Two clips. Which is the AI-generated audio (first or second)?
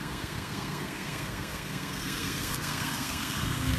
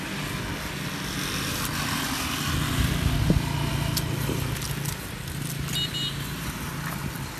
first